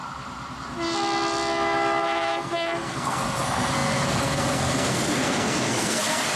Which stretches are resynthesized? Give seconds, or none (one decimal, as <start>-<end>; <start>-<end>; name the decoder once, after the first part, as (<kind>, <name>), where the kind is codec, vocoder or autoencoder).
2.0-6.4 (codec, SNAC)